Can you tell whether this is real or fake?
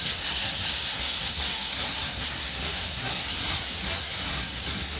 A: fake